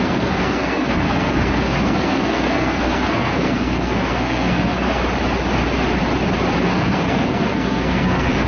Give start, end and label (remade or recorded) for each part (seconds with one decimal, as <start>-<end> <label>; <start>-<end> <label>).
0.0-5.0 remade; 5.0-6.6 recorded; 6.6-8.5 remade